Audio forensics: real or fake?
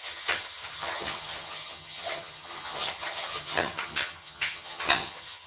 fake